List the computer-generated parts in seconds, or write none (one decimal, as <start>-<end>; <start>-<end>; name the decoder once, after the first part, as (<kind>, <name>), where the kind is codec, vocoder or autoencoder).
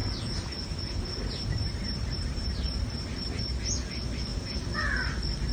0.0-3.3 (vocoder, BigVGAN v2); 4.3-4.8